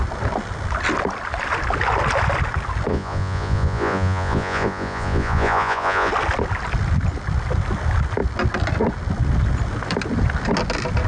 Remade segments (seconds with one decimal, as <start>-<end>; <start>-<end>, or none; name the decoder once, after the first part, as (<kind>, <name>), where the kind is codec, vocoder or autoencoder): 2.9-6.1 (vocoder, Vocos)